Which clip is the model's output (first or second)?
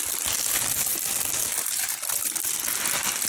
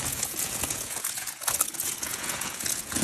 second